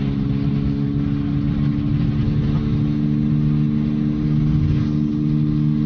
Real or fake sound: real